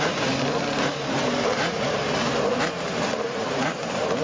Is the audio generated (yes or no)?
yes